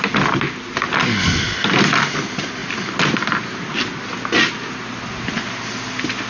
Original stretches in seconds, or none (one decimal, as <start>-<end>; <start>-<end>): 0.0-6.3